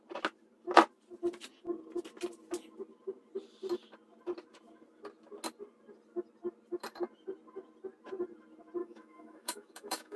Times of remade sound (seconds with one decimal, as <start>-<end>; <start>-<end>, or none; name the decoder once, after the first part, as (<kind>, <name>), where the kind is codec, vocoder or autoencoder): 8.8-10.2 (autoencoder, DAC-VAE)